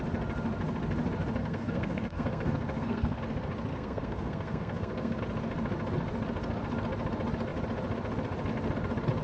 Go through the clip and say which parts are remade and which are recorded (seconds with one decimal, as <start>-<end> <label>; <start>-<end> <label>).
0.0-1.4 recorded; 1.4-3.2 remade; 3.2-3.7 recorded; 3.7-5.2 remade; 5.2-9.2 recorded